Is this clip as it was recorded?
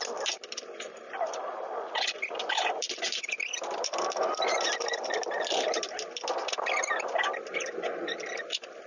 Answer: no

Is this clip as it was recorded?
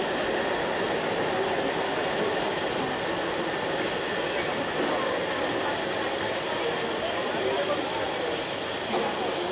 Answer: yes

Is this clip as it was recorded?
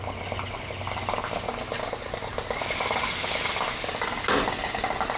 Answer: yes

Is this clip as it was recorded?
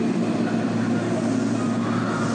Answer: yes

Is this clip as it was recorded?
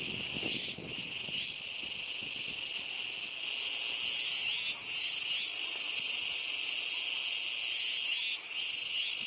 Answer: yes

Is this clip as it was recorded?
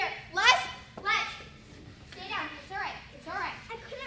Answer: yes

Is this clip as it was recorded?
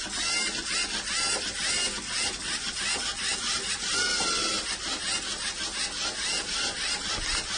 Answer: yes